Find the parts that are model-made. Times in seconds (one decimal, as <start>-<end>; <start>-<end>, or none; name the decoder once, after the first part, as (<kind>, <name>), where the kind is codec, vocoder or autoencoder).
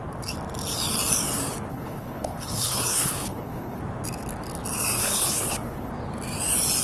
1.7-3.8 (codec, HILCodec); 5.0-5.9